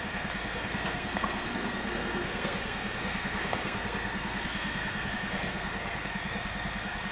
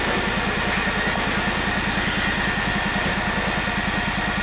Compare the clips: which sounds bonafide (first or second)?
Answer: second